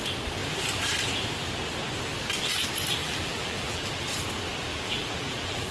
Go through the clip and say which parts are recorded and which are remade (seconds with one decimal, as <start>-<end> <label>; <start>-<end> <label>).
0.0-3.0 recorded; 3.0-3.9 remade; 3.9-4.7 recorded; 4.7-5.7 remade